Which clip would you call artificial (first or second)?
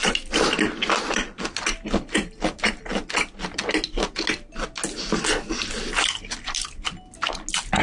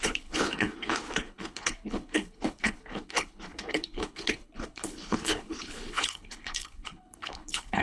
second